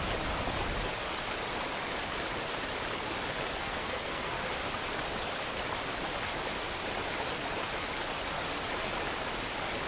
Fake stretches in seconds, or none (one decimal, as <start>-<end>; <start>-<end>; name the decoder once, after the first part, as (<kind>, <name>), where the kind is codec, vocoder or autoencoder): 3.6-4.5 (codec, SNAC)